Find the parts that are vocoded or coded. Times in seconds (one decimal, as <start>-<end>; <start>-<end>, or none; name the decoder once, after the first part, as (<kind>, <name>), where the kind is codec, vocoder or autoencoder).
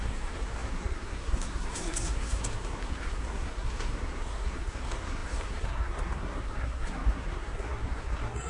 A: 0.0-8.5 (codec, SNAC)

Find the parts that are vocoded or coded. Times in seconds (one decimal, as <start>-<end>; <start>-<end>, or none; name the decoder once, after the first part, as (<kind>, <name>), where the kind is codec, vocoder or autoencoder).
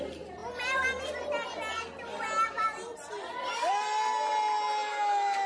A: 4.9-5.5 (autoencoder, DAC-VAE)